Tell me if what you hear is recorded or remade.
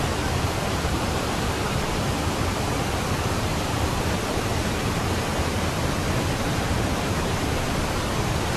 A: remade